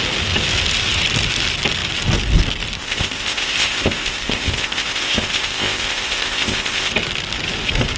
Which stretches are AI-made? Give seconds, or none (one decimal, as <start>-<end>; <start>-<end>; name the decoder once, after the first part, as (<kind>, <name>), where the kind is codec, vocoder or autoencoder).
2.8-6.9 (codec, ZipCodec)